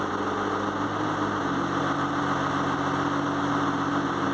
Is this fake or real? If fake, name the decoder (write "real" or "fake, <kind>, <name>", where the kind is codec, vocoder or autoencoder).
real